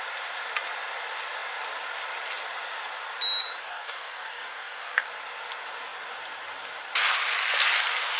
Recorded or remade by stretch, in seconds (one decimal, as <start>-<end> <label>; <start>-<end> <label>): 0.0-3.6 recorded; 3.6-5.1 remade; 5.1-8.2 recorded